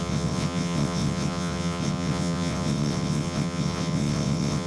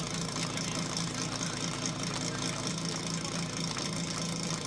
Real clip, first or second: second